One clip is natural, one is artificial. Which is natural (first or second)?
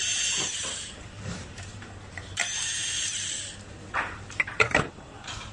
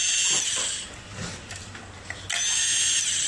second